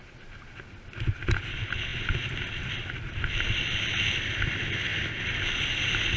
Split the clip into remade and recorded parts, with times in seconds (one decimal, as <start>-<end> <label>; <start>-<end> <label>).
0.0-6.2 recorded